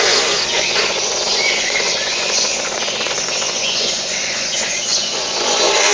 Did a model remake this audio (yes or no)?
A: yes